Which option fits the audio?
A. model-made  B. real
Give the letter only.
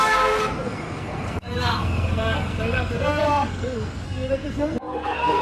A